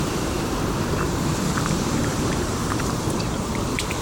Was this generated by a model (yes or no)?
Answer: yes